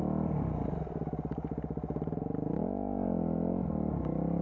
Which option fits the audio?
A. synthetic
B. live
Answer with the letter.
B